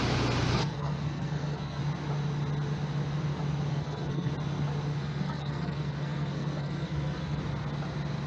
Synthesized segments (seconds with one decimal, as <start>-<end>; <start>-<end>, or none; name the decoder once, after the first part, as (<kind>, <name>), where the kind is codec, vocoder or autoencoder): 0.5-1.8 (codec, SNAC); 3.7-4.3; 4.9-7.4